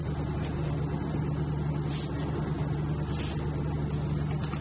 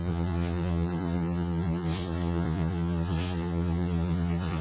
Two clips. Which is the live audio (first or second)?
first